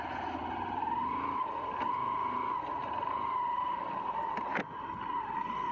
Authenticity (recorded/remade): recorded